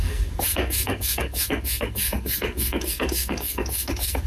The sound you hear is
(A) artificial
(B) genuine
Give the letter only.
A